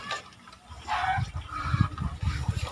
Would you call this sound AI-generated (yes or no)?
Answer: no